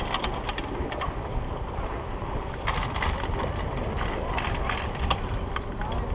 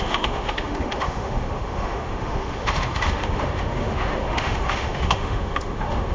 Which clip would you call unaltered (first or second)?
first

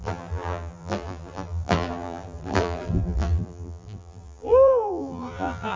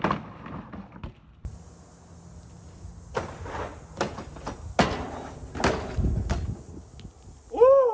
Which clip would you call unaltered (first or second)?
second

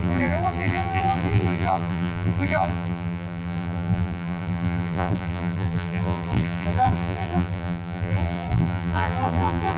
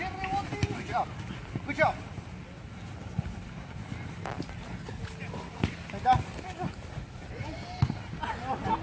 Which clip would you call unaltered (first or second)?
second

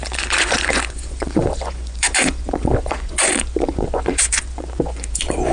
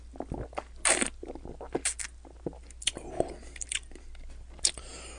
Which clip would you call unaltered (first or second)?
second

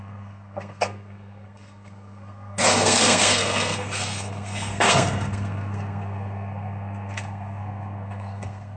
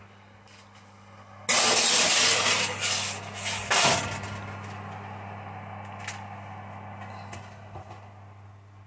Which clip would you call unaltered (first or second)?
second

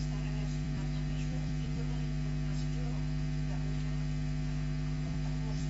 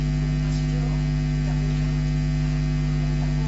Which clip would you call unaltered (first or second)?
second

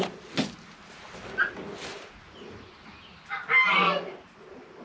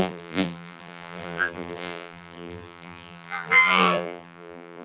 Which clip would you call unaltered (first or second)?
first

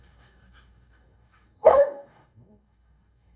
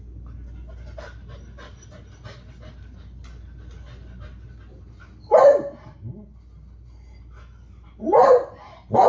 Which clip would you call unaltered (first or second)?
second